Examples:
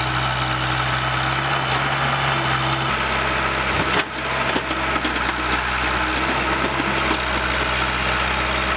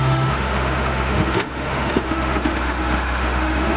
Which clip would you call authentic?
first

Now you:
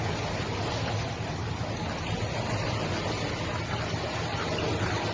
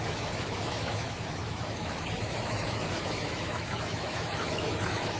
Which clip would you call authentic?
first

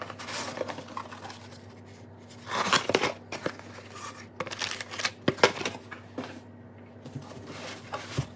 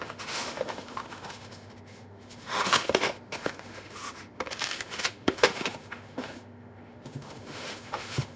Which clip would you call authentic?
first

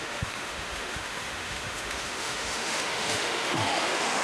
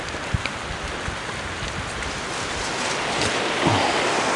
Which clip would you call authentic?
second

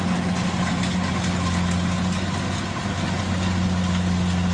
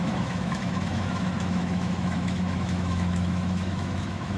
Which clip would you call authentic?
first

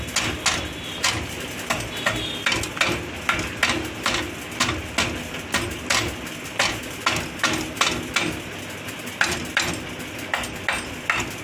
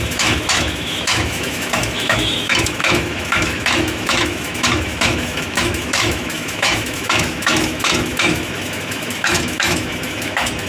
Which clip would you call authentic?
first